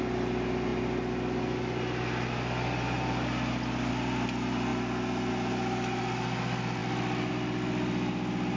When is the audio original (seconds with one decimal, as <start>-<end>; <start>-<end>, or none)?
0.0-8.6